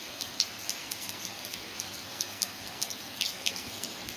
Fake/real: fake